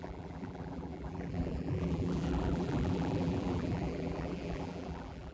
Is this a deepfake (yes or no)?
yes